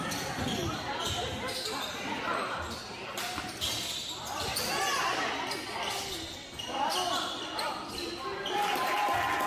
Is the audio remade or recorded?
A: recorded